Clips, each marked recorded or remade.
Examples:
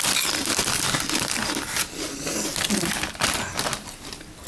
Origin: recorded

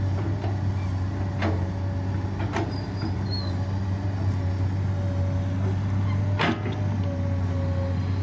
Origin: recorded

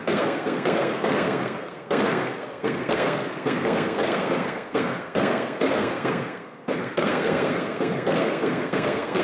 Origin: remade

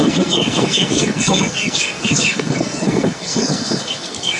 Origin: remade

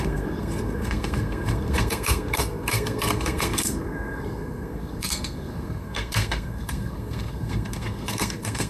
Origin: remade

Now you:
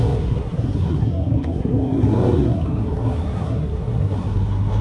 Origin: remade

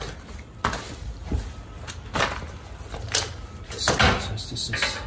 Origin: recorded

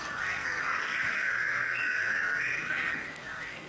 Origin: remade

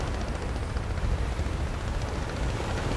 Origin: recorded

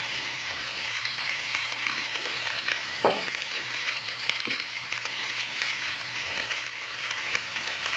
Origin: remade